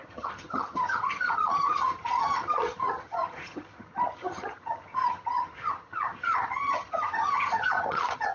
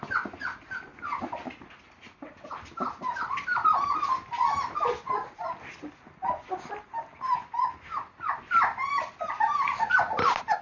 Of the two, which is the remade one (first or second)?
first